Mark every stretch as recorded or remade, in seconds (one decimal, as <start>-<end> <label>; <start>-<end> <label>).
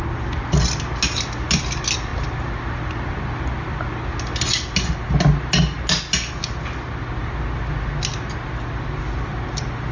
0.0-9.9 recorded